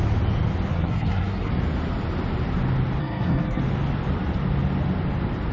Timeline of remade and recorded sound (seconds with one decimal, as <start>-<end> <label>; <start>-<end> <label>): 0.0-0.7 recorded; 0.7-1.5 remade; 1.5-3.0 recorded; 3.0-3.6 remade; 3.6-5.5 recorded